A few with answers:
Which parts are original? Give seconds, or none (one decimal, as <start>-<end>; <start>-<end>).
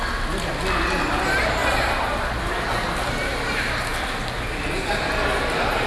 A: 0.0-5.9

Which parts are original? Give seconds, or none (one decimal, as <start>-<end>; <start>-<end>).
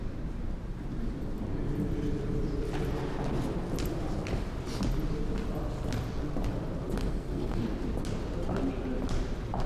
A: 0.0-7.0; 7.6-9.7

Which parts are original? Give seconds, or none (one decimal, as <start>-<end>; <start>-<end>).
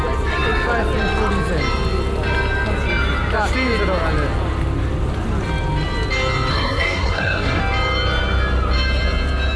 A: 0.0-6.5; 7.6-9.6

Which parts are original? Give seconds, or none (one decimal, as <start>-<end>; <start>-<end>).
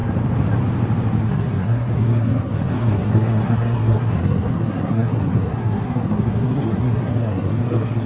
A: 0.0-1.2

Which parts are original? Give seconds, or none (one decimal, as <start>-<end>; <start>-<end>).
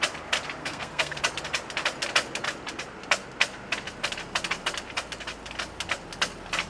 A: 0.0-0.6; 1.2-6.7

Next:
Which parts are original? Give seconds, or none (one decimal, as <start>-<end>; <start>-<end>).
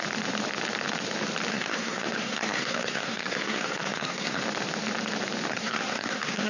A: 0.0-1.5; 4.4-5.5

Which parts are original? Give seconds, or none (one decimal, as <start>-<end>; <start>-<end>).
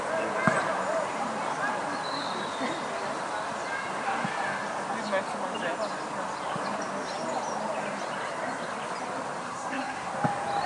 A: 0.0-9.4; 10.1-10.7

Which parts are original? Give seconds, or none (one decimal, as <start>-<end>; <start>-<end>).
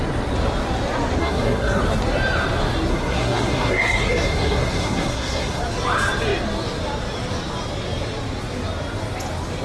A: 0.0-1.2; 1.8-2.9; 5.6-9.6